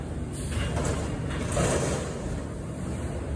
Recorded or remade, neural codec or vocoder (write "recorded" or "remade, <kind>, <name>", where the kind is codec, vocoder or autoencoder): recorded